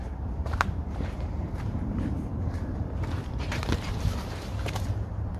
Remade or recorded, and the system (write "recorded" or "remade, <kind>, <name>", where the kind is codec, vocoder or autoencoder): remade, vocoder, BigVGAN v2